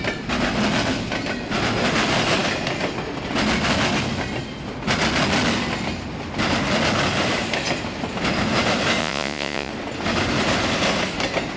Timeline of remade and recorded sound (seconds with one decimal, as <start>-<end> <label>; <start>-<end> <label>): 0.0-9.0 recorded; 9.0-9.7 remade; 9.7-11.6 recorded